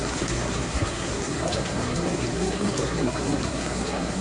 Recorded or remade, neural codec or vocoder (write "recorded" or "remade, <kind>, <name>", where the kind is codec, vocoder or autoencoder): remade, codec, SNAC